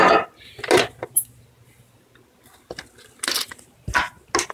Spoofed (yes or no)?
no